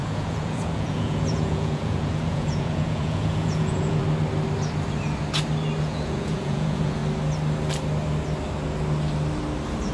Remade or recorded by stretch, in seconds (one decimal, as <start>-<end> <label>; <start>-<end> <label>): 0.0-4.0 remade; 4.0-5.8 recorded; 5.8-7.0 remade; 7.0-9.9 recorded